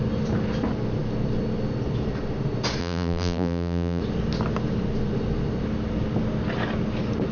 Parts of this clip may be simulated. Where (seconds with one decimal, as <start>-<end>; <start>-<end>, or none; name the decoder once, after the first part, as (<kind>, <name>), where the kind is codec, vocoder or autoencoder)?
2.8-4.0 (vocoder, BigVGAN v2)

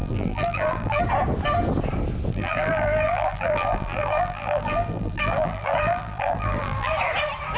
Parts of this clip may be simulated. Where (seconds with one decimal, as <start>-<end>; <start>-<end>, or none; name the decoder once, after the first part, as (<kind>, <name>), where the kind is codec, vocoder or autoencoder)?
0.0-1.0 (vocoder, BigVGAN v2); 2.3-6.9

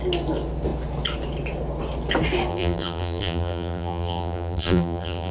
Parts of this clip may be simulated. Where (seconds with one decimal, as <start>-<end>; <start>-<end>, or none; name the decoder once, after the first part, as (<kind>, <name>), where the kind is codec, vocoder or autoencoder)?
2.5-5.3 (vocoder, BigVGAN v2)

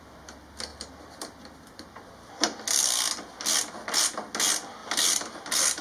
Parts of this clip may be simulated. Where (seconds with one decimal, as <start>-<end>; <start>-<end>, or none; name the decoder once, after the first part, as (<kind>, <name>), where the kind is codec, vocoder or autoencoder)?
4.8-5.8 (vocoder, BigVGAN v2)

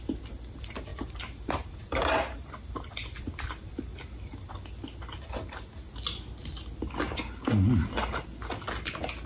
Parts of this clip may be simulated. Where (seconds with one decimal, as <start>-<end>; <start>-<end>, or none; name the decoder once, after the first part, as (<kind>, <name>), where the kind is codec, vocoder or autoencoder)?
0.9-2.5 (vocoder, BigVGAN v2)